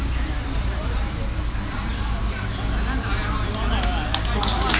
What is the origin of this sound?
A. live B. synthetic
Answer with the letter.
A